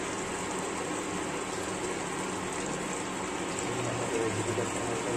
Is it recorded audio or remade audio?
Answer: recorded